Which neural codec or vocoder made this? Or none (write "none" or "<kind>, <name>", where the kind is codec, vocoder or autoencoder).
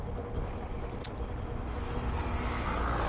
none